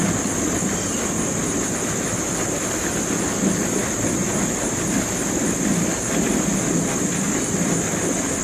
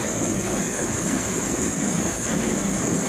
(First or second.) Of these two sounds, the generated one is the second